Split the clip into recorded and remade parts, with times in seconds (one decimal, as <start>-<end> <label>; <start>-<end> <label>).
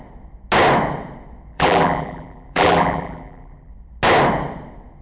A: 0.0-1.5 recorded; 1.5-3.7 remade; 3.7-5.0 recorded